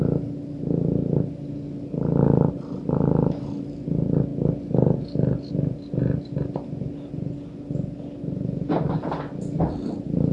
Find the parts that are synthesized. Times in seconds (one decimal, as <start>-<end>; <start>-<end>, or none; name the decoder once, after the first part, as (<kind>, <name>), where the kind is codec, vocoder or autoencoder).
none